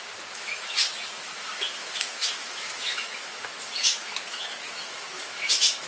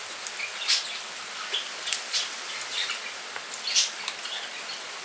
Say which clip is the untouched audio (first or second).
second